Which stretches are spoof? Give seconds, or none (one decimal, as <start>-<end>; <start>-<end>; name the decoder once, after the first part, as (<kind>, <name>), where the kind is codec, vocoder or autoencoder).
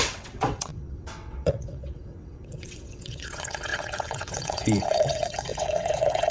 0.0-6.3 (vocoder, WaveNeXt)